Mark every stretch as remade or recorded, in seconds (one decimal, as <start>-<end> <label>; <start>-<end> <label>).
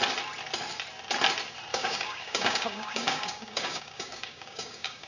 0.0-1.7 recorded; 1.7-5.1 remade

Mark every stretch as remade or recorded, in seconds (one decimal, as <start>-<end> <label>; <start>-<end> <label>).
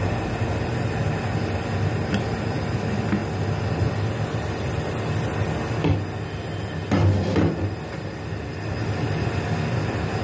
0.0-10.2 recorded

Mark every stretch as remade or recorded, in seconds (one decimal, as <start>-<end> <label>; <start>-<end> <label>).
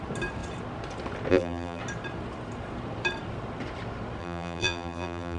0.0-1.3 recorded; 1.3-1.8 remade; 1.8-4.2 recorded; 4.2-5.4 remade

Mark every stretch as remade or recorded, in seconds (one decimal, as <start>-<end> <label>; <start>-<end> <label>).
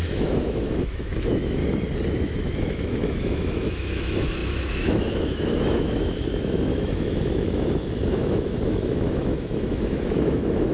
0.0-1.6 remade; 1.6-2.1 recorded; 2.1-10.7 remade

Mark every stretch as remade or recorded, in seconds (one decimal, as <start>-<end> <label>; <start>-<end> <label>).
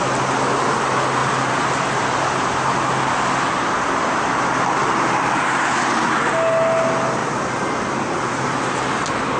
0.0-1.2 recorded; 1.2-2.3 remade; 2.3-7.2 recorded; 7.2-8.8 remade; 8.8-9.4 recorded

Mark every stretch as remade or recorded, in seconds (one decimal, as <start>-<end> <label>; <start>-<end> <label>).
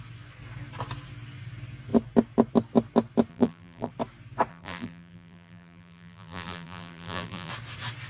0.0-3.3 recorded; 3.3-3.9 remade; 3.9-4.5 recorded; 4.5-7.5 remade; 7.5-8.1 recorded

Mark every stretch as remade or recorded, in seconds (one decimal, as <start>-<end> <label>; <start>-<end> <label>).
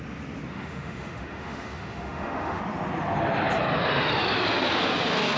0.0-0.5 recorded; 0.5-2.6 remade; 2.6-5.4 recorded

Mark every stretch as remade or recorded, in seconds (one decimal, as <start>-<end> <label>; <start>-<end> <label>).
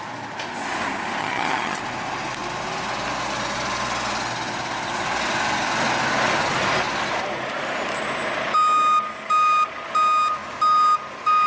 0.0-1.2 recorded; 1.2-1.8 remade; 1.8-11.5 recorded